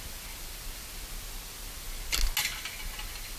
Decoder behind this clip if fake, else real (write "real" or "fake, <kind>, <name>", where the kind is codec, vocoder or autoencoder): real